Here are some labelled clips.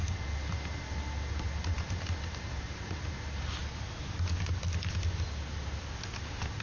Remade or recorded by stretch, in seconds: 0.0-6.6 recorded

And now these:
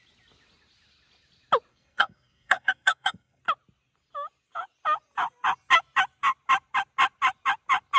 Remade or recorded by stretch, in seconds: 0.0-1.7 recorded; 1.7-3.4 remade; 3.4-8.0 recorded

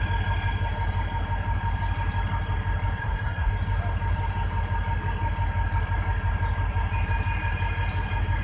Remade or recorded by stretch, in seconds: 0.0-3.0 recorded; 3.0-3.5 remade; 3.5-8.4 recorded

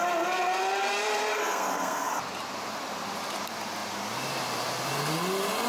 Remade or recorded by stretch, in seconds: 0.0-1.4 recorded; 1.4-2.1 remade; 2.1-5.7 recorded

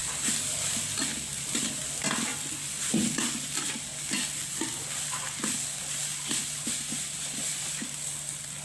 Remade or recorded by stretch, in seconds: 0.0-8.6 recorded

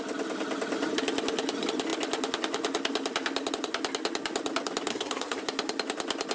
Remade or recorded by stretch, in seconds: 0.0-4.9 recorded; 4.9-5.4 remade; 5.4-6.3 recorded

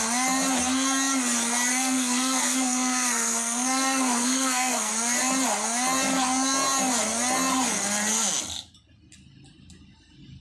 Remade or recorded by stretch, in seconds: 0.0-1.7 recorded; 1.7-4.9 remade; 4.9-10.4 recorded